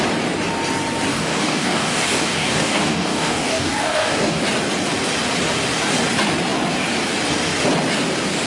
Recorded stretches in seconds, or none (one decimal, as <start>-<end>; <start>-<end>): 0.0-1.1; 4.4-8.5